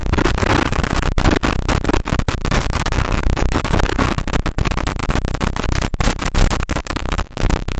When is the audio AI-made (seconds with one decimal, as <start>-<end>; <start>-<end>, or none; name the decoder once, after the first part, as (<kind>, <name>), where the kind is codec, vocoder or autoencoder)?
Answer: 0.0-0.8 (codec, DAC); 2.4-4.3; 6.8-7.8